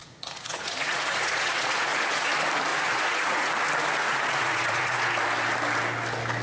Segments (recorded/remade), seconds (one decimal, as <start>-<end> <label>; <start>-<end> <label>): 0.0-2.3 remade; 2.3-2.7 recorded; 2.7-3.5 remade; 3.5-4.0 recorded; 4.0-5.0 remade; 5.0-6.4 recorded